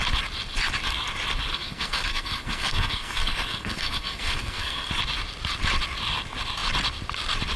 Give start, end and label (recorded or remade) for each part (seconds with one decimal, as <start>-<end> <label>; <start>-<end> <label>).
0.0-1.5 recorded; 1.5-4.9 remade; 4.9-7.6 recorded